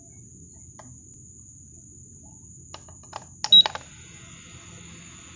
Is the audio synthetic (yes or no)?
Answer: no